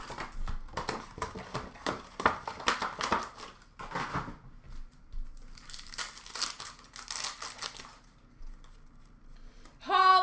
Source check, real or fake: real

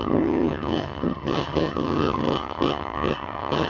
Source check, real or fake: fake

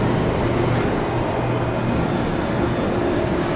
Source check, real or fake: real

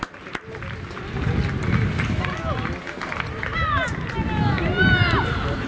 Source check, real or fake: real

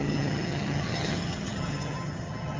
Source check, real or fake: fake